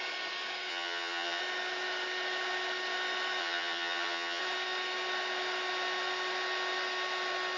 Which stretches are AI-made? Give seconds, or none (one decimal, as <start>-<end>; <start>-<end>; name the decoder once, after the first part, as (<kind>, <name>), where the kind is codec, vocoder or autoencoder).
0.7-1.4 (vocoder, HiFi-GAN); 3.4-4.4